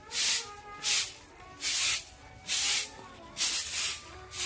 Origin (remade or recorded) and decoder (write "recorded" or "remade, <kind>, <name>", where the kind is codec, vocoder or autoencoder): recorded